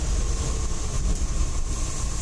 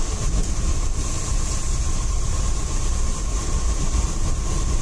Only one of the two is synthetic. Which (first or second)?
second